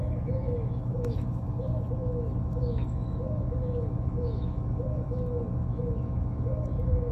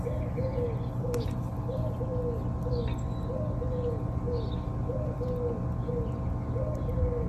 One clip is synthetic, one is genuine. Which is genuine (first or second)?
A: second